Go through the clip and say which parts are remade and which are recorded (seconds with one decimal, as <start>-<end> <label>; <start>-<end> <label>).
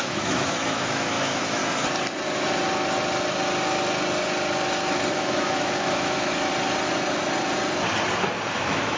0.0-1.6 remade; 1.6-5.1 recorded; 5.1-6.5 remade; 6.5-8.5 recorded; 8.5-9.0 remade